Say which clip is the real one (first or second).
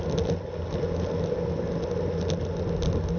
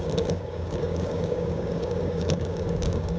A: first